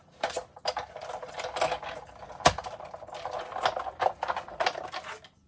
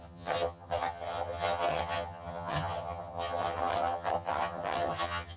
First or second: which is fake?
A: second